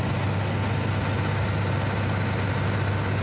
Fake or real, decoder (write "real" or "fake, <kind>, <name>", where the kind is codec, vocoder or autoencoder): real